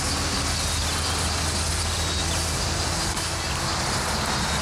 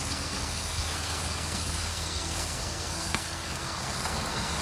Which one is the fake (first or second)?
second